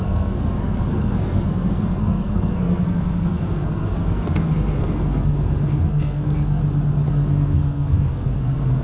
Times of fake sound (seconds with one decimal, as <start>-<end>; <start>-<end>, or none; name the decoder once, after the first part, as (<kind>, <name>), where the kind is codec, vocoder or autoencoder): 0.0-6.6 (codec, SNAC); 7.1-8.8